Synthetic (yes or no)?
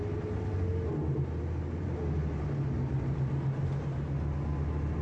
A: no